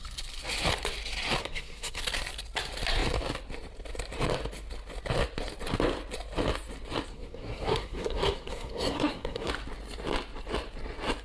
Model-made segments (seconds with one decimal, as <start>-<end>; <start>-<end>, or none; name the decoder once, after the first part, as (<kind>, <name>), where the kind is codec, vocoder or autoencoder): 1.4-2.0 (codec, SNAC); 7.1-9.5